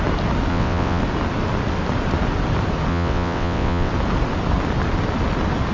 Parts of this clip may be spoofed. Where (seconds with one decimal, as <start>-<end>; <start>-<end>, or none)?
0.5-1.0; 2.9-3.9